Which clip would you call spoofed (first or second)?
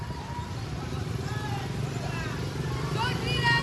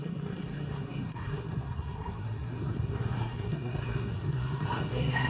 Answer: second